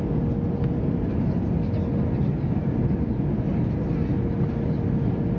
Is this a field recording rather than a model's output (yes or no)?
yes